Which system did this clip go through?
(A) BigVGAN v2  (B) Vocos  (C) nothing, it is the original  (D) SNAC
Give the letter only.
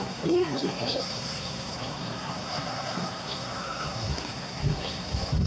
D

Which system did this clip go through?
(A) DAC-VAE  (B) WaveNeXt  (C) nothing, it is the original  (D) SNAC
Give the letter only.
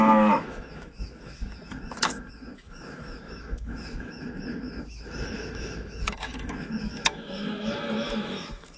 A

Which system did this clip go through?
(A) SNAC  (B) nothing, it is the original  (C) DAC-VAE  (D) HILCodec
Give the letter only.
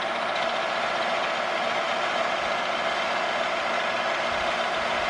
B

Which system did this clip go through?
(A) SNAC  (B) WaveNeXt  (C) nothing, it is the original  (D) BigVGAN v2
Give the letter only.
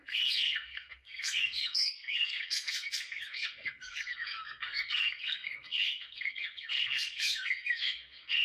A